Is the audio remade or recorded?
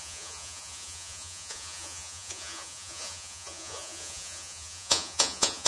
remade